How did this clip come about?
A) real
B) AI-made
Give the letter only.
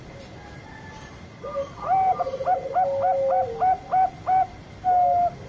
A